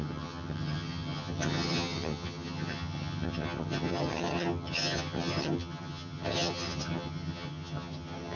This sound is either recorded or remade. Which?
remade